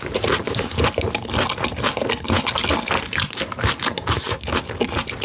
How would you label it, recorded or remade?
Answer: recorded